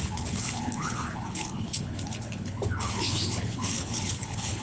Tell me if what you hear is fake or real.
fake